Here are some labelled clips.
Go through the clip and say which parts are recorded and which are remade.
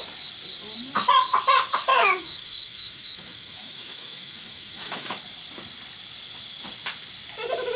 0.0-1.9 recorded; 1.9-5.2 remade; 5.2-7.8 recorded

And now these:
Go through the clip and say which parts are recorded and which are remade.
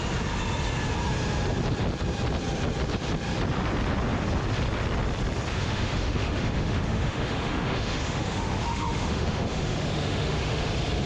0.0-5.5 recorded; 5.5-10.7 remade; 10.7-11.1 recorded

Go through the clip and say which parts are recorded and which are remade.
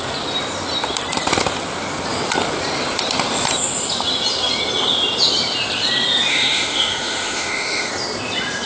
0.0-6.3 recorded; 6.3-7.9 remade; 7.9-8.7 recorded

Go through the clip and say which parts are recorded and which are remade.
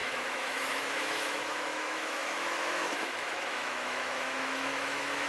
0.0-5.3 remade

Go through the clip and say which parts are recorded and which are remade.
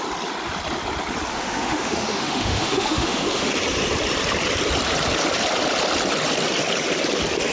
0.0-1.3 recorded; 1.3-3.5 remade; 3.5-7.5 recorded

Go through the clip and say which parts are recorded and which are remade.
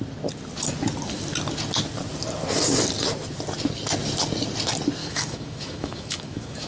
0.0-5.0 recorded; 5.0-6.7 remade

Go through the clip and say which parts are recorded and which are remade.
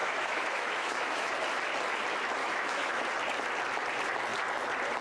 0.0-1.3 remade; 1.3-2.4 recorded; 2.4-3.0 remade; 3.0-5.0 recorded